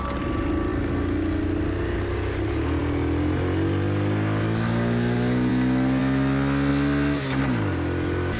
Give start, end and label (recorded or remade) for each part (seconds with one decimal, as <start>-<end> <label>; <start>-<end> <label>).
0.0-8.4 recorded